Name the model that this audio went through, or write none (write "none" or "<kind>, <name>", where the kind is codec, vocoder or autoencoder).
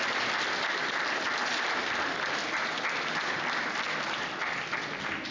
none